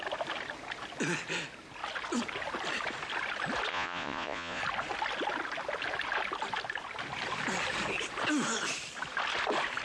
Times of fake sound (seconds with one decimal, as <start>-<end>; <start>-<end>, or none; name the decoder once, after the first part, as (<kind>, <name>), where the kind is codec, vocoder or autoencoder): 3.7-4.6 (vocoder, Vocos)